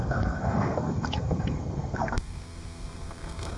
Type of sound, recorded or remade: remade